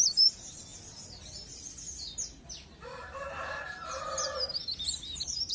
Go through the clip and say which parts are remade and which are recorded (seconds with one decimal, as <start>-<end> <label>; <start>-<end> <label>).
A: 0.0-0.7 remade; 0.7-4.0 recorded; 4.0-5.5 remade